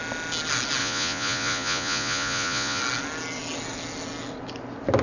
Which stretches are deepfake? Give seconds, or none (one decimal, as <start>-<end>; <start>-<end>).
0.8-2.8